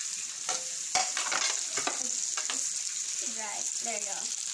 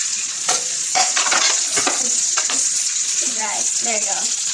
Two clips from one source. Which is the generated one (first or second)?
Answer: second